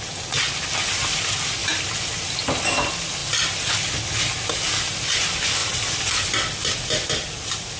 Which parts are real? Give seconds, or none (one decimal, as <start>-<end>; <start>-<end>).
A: 0.0-7.8